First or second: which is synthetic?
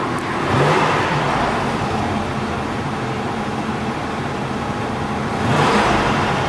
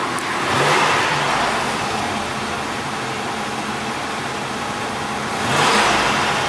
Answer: first